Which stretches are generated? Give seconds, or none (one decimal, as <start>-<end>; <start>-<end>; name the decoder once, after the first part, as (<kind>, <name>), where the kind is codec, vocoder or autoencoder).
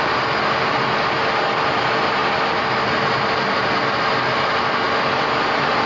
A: none